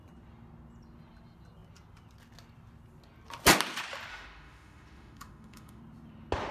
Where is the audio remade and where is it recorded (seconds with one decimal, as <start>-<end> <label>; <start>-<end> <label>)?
0.0-4.1 recorded; 4.1-5.8 remade; 5.8-6.5 recorded